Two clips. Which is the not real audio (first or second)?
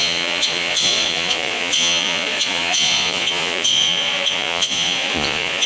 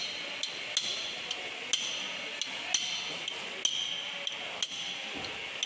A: first